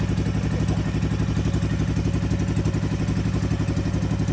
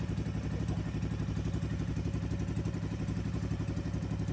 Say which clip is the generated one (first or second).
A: second